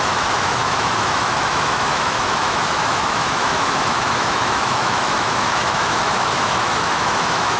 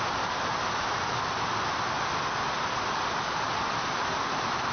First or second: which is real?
second